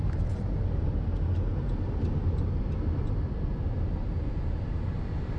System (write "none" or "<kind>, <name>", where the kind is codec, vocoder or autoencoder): none